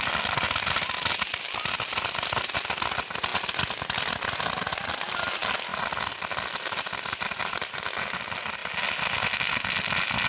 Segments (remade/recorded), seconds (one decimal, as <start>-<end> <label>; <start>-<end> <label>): 0.0-10.3 recorded